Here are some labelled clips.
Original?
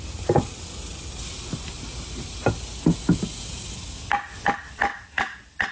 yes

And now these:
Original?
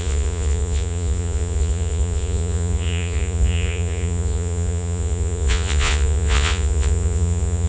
no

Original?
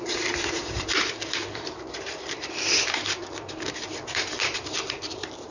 no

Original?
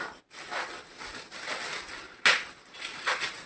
yes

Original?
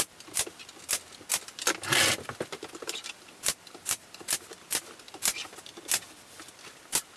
yes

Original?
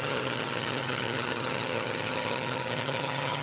no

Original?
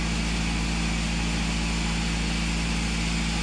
yes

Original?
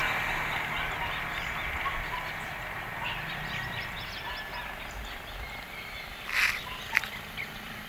yes